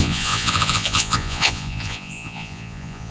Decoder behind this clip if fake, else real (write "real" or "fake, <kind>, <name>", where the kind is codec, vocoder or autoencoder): fake, vocoder, Vocos